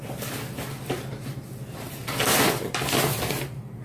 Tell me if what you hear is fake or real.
real